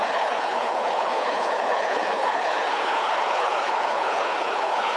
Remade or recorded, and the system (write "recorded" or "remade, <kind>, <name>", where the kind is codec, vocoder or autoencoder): remade, codec, HILCodec